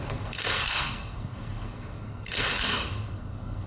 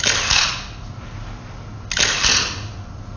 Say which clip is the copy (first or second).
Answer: first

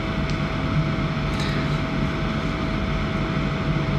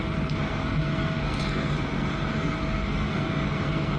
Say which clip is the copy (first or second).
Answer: second